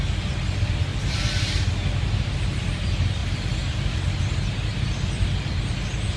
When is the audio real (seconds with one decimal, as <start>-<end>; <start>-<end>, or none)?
0.0-6.2